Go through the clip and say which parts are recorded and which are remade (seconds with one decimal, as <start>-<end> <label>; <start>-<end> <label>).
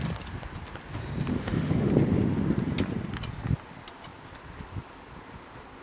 0.0-1.3 recorded; 1.3-1.9 remade; 1.9-5.8 recorded